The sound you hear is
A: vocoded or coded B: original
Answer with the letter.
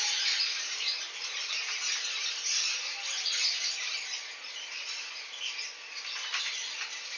B